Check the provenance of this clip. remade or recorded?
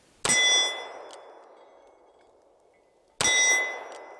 recorded